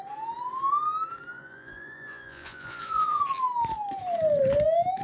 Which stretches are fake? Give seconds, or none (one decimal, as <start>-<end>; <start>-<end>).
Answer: 1.3-3.2